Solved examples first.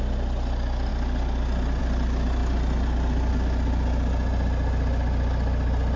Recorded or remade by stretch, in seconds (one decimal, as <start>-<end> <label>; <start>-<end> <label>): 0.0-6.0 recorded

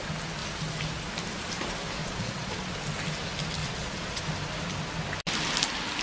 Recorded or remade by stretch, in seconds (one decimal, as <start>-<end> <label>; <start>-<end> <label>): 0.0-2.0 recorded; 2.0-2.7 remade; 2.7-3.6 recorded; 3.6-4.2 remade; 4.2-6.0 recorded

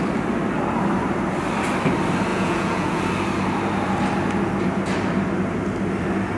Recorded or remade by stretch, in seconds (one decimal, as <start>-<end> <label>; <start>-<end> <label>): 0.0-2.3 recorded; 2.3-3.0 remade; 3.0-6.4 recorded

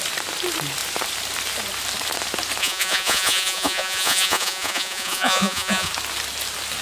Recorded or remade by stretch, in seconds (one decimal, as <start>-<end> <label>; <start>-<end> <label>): 0.0-2.6 recorded; 2.6-5.9 remade; 5.9-6.8 recorded

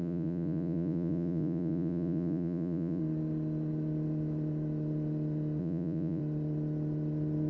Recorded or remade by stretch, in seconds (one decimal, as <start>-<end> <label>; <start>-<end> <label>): 0.0-3.0 remade; 3.0-5.6 recorded; 5.6-6.2 remade; 6.2-7.5 recorded

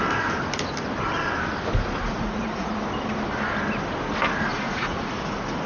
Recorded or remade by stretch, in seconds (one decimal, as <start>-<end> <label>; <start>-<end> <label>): 0.0-2.0 recorded; 2.0-2.7 remade; 2.7-4.5 recorded; 4.5-5.1 remade; 5.1-5.7 recorded

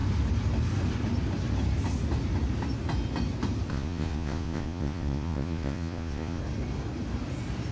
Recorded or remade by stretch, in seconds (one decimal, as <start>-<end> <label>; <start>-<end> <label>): 0.0-3.7 recorded; 3.7-6.4 remade; 6.4-7.7 recorded

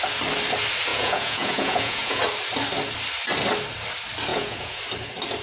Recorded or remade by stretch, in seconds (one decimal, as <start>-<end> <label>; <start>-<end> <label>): 0.0-0.9 recorded; 0.9-2.2 remade; 2.2-4.3 recorded; 4.3-4.8 remade; 4.8-5.4 recorded